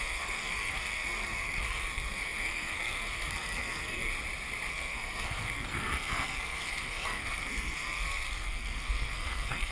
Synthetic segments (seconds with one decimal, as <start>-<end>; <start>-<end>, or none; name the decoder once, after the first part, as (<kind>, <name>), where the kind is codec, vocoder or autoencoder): 0.0-4.1 (codec, SNAC); 4.7-9.7